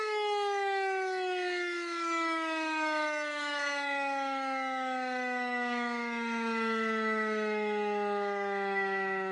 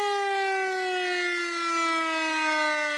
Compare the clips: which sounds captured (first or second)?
second